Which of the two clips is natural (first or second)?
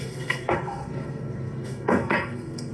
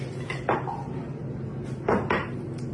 second